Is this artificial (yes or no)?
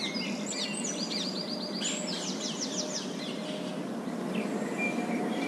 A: no